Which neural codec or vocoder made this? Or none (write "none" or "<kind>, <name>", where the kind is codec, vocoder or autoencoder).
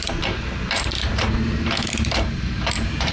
vocoder, BigVGAN v2